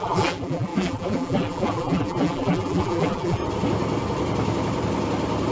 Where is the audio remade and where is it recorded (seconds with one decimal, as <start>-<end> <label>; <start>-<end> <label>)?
0.0-3.4 remade; 3.4-5.5 recorded